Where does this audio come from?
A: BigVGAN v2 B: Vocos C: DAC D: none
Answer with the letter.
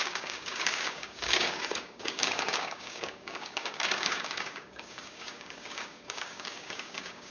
C